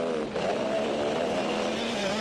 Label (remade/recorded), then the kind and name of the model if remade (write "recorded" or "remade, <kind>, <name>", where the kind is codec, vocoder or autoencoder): recorded